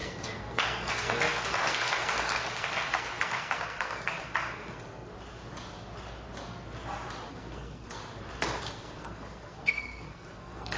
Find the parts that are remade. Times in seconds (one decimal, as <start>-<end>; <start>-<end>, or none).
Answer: 0.0-5.1; 7.3-8.0; 8.6-10.8